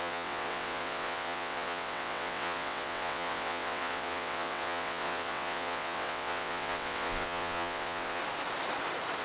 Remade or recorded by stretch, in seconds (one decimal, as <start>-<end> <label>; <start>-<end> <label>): 0.0-8.2 remade; 8.2-9.2 recorded